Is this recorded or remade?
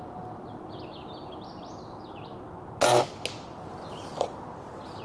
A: recorded